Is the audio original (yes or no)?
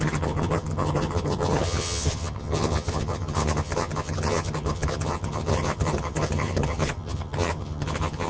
no